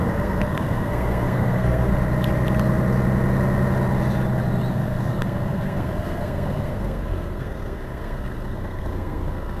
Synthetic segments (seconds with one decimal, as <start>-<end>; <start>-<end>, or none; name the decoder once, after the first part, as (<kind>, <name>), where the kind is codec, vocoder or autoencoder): 0.0-1.9 (codec, SNAC); 4.7-9.6